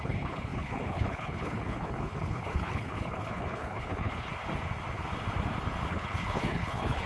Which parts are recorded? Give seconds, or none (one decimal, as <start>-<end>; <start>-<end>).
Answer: 4.3-5.9